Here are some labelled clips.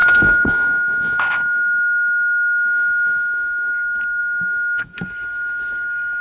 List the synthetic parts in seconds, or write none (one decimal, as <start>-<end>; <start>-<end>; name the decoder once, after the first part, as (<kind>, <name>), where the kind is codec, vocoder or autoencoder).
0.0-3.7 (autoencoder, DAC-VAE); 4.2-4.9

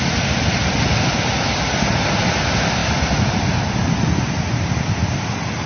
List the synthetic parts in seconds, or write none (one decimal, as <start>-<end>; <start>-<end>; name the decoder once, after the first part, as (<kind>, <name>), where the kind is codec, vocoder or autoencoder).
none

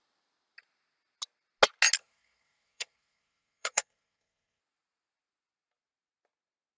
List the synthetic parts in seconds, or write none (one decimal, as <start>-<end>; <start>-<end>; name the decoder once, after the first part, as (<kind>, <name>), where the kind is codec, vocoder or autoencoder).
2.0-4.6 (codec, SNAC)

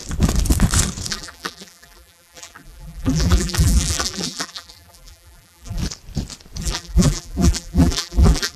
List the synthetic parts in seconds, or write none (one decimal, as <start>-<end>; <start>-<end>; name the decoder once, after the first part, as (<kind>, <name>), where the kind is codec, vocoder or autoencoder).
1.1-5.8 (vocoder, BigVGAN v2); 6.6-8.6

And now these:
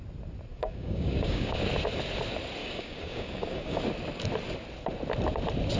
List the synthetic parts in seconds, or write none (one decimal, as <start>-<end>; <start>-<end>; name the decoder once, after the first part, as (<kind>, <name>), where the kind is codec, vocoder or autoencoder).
0.5-1.7 (codec, DAC); 2.6-3.8

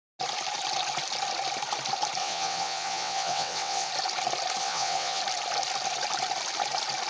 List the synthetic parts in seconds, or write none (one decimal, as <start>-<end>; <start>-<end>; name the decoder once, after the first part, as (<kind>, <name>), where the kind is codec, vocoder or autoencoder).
2.2-3.9 (vocoder, WaveNeXt); 4.6-5.2

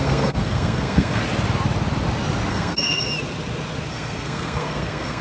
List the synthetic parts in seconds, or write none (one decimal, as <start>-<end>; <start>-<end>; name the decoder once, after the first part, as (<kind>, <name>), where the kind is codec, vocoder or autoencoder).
0.0-1.2 (codec, SNAC); 2.5-3.1; 3.9-5.2